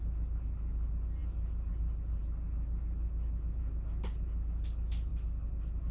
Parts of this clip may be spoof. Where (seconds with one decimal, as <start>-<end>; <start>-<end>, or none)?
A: none